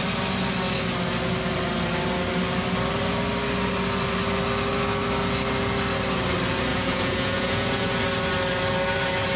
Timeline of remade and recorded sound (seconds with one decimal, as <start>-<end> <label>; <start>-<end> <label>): 0.0-6.7 recorded; 6.7-7.9 remade; 7.9-9.4 recorded